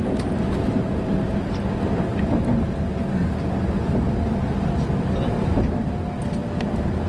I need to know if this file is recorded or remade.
recorded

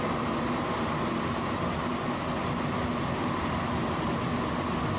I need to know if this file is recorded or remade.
recorded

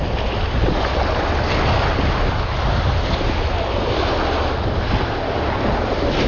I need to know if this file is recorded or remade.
recorded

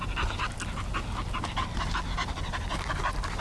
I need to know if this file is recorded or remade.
recorded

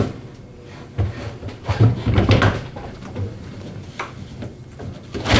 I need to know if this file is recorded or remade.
recorded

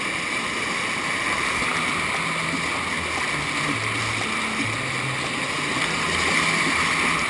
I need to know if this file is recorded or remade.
recorded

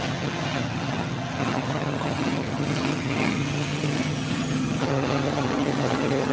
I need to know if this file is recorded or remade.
remade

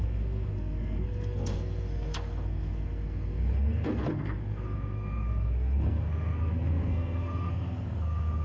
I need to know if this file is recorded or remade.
remade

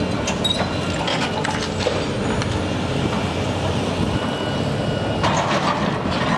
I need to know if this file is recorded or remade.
recorded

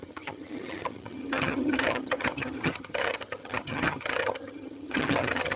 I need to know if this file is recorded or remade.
remade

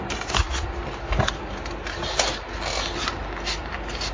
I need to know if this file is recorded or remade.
recorded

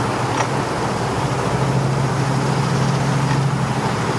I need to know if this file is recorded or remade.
recorded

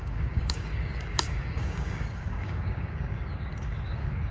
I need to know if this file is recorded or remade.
remade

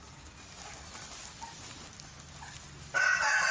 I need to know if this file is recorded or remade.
recorded